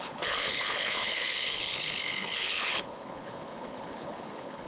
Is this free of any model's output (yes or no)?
no